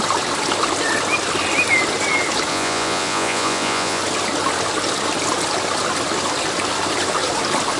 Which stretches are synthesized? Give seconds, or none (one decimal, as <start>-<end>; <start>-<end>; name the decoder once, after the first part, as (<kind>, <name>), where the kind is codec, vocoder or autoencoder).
2.5-4.0 (vocoder, Vocos)